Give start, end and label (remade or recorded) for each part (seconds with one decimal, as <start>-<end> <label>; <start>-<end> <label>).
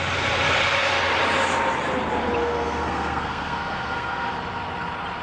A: 0.0-2.4 recorded; 2.4-4.3 remade; 4.3-5.2 recorded